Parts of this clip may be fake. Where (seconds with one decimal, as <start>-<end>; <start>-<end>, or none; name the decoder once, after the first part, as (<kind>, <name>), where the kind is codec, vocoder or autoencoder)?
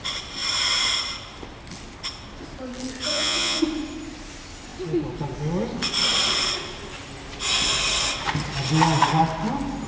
3.1-3.6 (vocoder, Vocos)